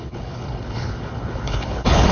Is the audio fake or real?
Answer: fake